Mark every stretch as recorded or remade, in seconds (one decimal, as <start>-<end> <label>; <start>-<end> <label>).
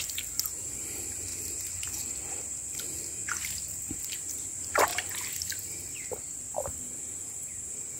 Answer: 0.0-1.3 remade; 1.3-2.1 recorded; 2.1-3.2 remade; 3.2-3.8 recorded; 3.8-4.9 remade; 4.9-5.5 recorded; 5.5-8.0 remade